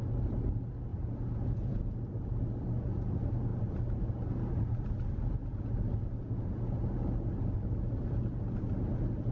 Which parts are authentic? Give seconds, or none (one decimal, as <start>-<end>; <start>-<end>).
0.0-0.9; 1.8-5.4; 6.9-9.3

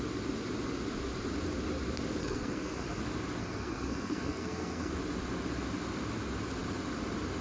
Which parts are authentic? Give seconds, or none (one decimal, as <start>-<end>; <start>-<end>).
0.0-2.2; 3.0-3.4; 4.9-7.4

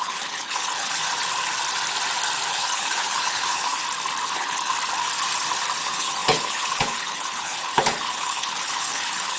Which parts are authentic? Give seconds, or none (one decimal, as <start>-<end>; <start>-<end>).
1.0-2.5; 3.8-4.3; 4.7-5.8

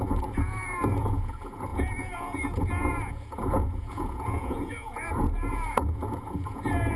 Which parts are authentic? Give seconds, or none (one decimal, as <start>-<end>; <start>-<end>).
none

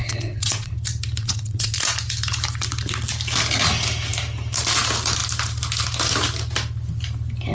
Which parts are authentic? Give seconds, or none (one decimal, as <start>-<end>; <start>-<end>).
0.7-1.2; 1.7-7.5

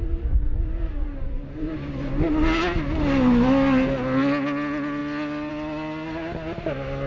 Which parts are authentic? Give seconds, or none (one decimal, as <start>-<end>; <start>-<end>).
0.0-7.1

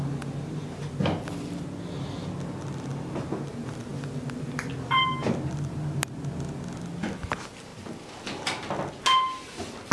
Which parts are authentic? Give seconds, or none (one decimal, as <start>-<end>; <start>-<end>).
0.0-9.9